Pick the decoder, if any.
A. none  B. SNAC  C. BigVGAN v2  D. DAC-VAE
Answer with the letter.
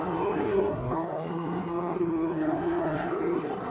B